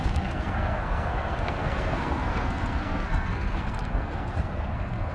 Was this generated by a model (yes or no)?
yes